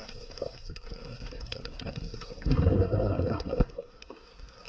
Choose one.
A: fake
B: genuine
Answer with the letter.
A